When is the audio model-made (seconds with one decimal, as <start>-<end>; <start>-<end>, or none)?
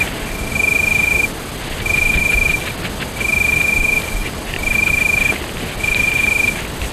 4.2-4.9